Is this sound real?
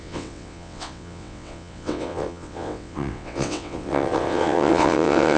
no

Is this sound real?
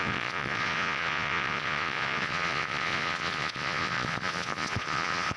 no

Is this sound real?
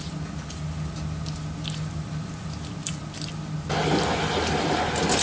yes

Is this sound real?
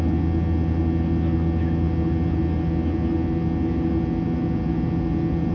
yes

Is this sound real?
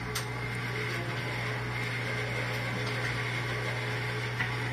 yes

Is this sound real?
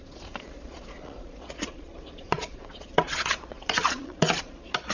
no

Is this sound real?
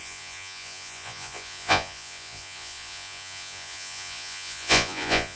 no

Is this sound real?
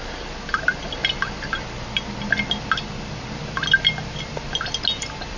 yes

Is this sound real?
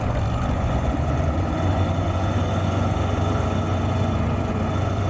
no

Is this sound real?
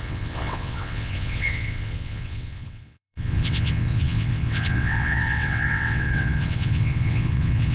no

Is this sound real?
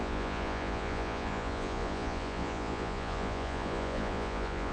no